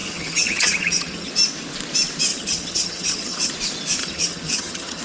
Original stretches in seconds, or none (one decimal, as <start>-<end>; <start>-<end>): 1.3-2.3; 3.5-4.0